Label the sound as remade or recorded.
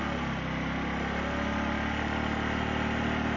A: recorded